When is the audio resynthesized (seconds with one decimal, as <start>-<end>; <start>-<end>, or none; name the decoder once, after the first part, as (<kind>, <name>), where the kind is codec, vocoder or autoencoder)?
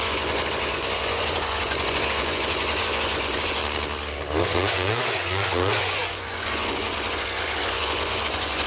0.0-3.6 (vocoder, Vocos); 4.4-8.7